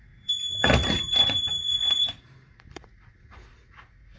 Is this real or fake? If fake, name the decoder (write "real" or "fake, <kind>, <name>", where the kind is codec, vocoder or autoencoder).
fake, vocoder, Vocos